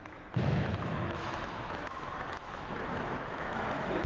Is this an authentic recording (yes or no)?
no